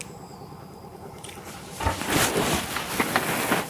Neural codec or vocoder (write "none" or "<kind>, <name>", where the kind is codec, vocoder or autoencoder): vocoder, BigVGAN v2